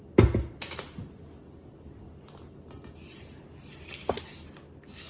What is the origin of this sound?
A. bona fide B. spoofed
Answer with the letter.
A